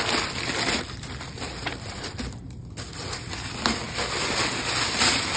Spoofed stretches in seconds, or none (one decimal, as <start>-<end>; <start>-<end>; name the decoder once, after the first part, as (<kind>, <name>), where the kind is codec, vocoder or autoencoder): 1.7-2.9 (vocoder, BigVGAN v2)